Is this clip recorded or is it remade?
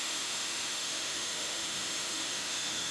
remade